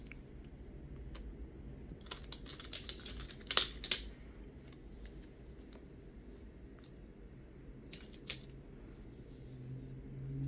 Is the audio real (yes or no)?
yes